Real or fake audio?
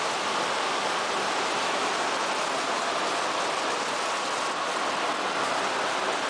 real